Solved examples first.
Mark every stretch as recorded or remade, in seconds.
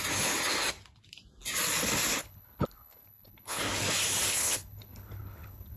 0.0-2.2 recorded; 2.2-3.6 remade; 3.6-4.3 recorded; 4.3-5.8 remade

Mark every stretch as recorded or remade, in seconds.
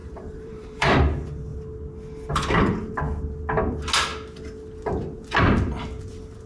0.0-1.0 remade; 1.0-6.5 recorded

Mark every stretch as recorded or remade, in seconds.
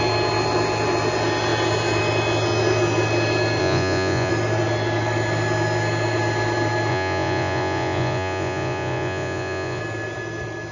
0.0-3.6 recorded; 3.6-4.3 remade; 4.3-6.9 recorded; 6.9-9.8 remade; 9.8-10.7 recorded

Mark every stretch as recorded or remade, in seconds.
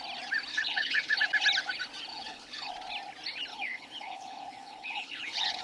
0.0-0.5 recorded; 0.5-1.2 remade; 1.2-2.1 recorded; 2.1-2.7 remade; 2.7-3.5 recorded; 3.5-5.6 remade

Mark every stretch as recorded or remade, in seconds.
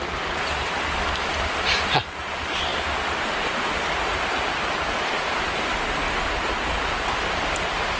0.0-8.0 recorded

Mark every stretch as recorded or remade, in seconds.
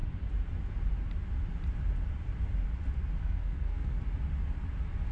0.0-3.2 recorded; 3.2-4.0 remade; 4.0-5.1 recorded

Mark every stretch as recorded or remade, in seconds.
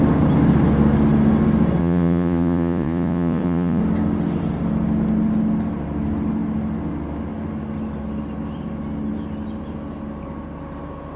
0.0-1.8 recorded; 1.8-3.8 remade; 3.8-11.2 recorded